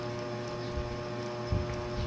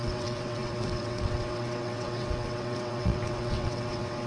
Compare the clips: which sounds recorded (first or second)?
first